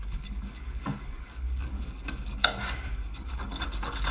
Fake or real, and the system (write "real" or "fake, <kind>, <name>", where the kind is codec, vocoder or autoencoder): fake, codec, DAC